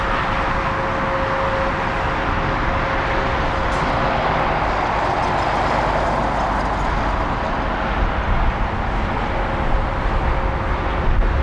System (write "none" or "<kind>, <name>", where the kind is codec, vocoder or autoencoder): none